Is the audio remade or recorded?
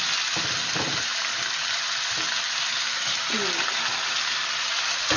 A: recorded